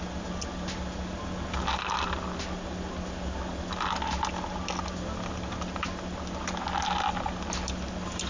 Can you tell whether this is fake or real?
real